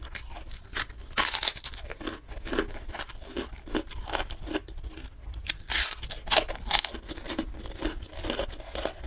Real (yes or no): yes